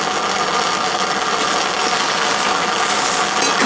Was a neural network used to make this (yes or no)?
no